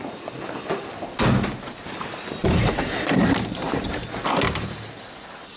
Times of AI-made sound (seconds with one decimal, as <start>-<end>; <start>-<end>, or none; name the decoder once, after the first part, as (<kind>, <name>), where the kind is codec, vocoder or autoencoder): 2.4-3.2 (vocoder, BigVGAN v2)